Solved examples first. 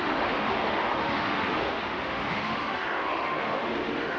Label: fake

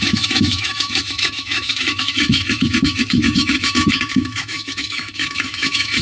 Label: fake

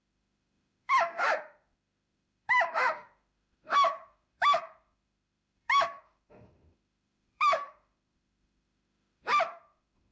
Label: fake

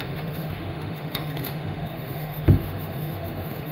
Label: fake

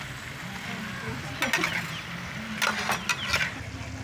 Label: real